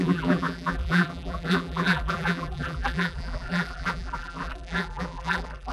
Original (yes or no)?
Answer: no